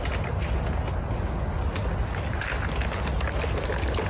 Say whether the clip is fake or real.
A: real